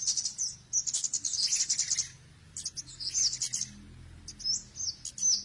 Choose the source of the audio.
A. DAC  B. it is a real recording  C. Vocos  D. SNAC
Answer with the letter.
B